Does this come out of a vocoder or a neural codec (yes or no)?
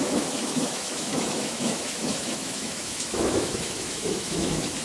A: yes